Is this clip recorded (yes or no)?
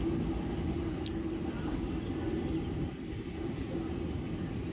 yes